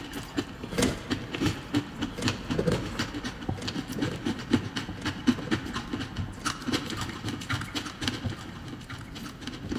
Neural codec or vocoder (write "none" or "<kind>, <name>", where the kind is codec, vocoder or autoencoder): none